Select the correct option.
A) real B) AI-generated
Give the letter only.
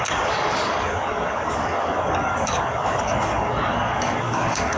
B